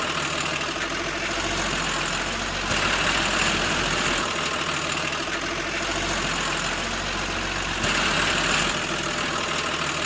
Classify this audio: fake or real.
real